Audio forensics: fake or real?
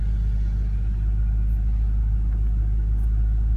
real